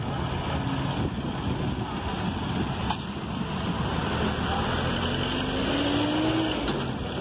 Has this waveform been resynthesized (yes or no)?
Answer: no